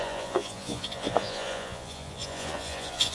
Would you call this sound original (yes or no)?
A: no